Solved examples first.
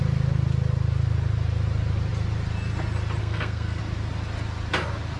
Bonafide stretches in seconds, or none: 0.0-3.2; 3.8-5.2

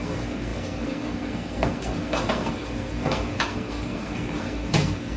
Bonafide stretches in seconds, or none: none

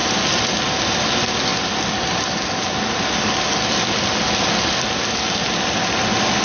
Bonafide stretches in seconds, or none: 0.0-6.4